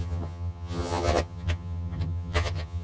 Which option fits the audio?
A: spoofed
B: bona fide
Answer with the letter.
A